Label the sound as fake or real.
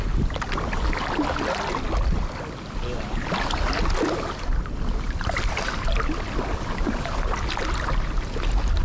real